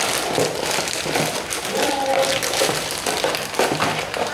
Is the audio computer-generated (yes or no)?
no